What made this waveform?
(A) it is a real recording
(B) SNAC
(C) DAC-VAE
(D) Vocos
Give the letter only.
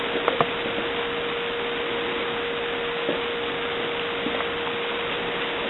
A